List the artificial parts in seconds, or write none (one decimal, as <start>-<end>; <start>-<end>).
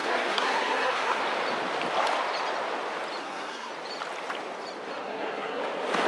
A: 0.0-1.2; 3.2-3.7; 5.0-5.6